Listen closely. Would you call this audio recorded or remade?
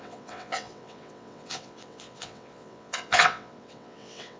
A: remade